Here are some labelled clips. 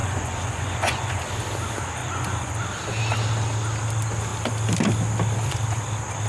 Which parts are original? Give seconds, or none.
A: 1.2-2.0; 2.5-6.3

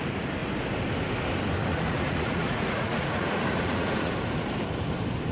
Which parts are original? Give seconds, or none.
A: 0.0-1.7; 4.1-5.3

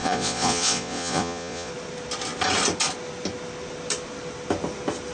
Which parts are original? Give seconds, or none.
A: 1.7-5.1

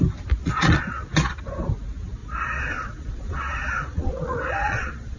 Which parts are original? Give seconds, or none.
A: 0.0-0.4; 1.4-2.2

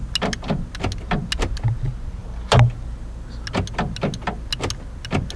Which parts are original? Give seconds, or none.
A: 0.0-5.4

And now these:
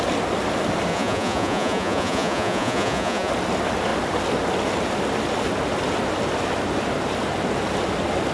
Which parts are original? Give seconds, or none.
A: 0.0-0.9; 3.3-8.3

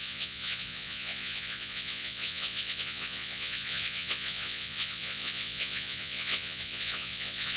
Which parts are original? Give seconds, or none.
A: none

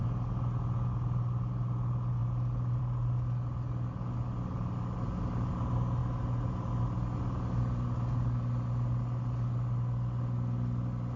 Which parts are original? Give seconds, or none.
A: 0.0-11.2